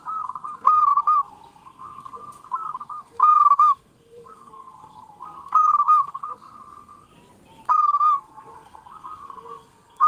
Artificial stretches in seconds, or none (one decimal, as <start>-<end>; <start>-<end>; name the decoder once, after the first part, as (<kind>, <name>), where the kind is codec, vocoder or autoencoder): 0.0-7.1 (codec, SNAC); 7.7-10.1